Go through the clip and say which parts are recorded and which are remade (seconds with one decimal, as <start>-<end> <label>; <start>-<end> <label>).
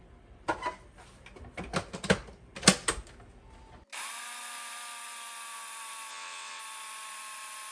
0.0-6.1 recorded; 6.1-6.6 remade; 6.6-7.7 recorded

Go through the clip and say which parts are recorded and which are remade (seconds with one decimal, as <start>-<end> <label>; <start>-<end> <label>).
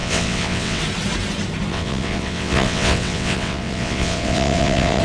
0.0-0.8 remade; 0.8-1.7 recorded; 1.7-5.0 remade